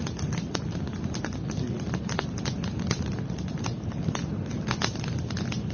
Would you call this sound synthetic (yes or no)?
no